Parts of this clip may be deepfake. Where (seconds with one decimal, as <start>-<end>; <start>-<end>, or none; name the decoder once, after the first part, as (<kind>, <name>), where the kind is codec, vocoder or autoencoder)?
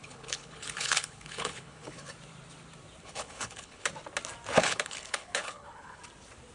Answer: 0.0-2.1 (codec, HILCodec); 3.0-3.9; 4.6-6.0